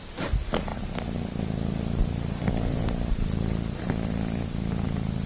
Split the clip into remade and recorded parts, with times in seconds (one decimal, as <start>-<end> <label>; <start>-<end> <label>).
0.0-5.3 recorded